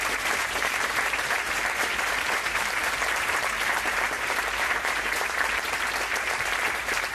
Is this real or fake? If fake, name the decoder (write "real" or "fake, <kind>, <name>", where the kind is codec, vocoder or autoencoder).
fake, vocoder, BigVGAN v2